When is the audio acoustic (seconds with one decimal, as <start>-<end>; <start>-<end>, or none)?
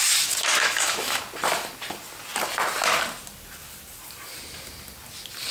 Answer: 0.0-0.5; 1.2-5.5